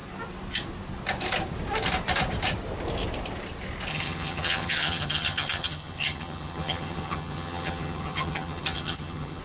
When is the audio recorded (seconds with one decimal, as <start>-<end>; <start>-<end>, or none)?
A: 0.0-3.9